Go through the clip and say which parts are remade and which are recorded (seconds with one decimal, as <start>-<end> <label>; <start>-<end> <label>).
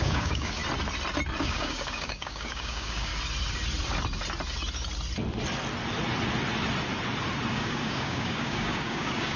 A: 0.0-0.6 remade; 0.6-1.4 recorded; 1.4-3.1 remade; 3.1-7.5 recorded; 7.5-9.4 remade